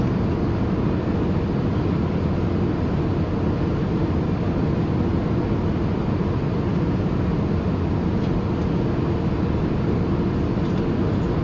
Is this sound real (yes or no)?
yes